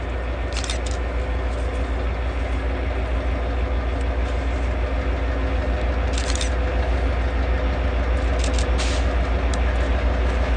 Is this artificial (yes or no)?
no